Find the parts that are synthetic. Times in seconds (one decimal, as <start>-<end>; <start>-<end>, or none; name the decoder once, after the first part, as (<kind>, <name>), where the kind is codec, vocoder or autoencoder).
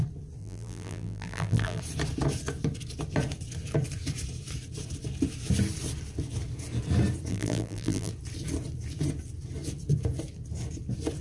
0.4-1.8 (vocoder, BigVGAN v2); 7.3-8.1